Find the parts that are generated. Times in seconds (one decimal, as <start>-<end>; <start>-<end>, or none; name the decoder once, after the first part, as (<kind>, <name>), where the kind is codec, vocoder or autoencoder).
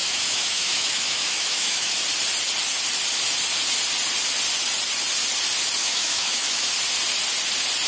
0.0-2.0 (autoencoder, DAC-VAE); 5.8-6.7